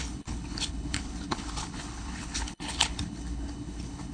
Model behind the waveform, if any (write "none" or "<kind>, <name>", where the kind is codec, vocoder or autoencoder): codec, HILCodec